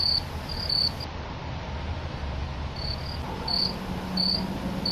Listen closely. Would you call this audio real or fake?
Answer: real